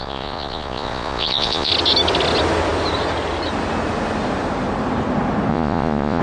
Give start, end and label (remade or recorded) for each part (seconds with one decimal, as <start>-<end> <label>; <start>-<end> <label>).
0.0-1.7 remade; 1.7-5.5 recorded; 5.5-6.2 remade